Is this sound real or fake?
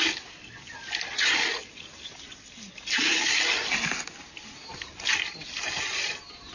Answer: real